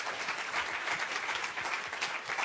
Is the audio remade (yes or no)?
no